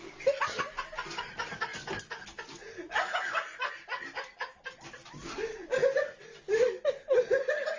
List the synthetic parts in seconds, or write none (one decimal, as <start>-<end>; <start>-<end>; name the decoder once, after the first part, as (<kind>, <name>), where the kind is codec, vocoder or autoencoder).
none

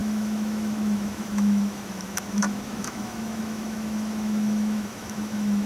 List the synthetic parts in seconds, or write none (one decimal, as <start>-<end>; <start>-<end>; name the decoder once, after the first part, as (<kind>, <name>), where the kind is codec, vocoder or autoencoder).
0.0-5.7 (autoencoder, DAC-VAE)

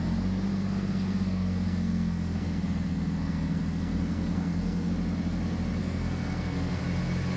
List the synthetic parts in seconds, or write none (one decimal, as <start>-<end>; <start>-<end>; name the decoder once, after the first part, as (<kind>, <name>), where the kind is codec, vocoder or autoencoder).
0.5-4.9 (codec, SNAC); 5.8-6.8

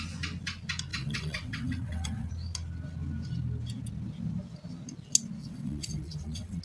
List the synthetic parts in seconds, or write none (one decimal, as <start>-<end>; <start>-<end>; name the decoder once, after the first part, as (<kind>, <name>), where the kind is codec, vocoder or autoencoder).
0.9-2.3 (vocoder, WaveNeXt); 5.4-6.6